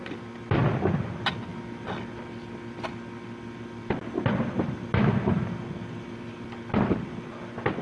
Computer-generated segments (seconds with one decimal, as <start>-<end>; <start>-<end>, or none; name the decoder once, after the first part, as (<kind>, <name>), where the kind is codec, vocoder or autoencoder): none